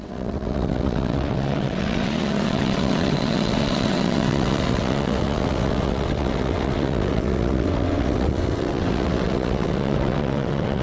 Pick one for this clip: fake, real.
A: fake